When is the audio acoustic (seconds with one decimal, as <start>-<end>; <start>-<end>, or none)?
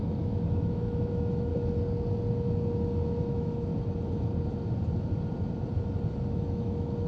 1.5-3.2; 3.7-6.3